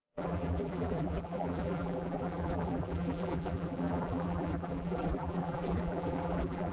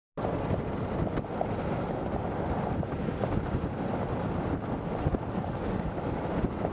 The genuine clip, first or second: second